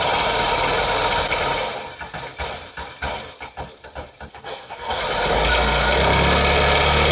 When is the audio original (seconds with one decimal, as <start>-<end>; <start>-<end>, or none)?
0.0-4.3; 5.0-7.1